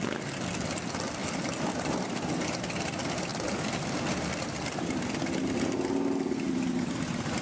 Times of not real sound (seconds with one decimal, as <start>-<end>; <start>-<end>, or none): 3.3-4.8